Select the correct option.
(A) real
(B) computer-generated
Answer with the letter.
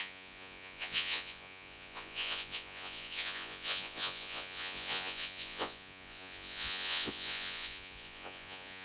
B